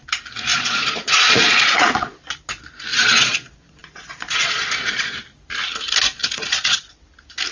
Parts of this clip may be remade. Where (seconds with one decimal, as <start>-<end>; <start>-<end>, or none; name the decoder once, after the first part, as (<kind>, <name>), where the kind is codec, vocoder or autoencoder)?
0.5-2.2 (vocoder, Vocos); 2.9-5.2; 6.2-6.9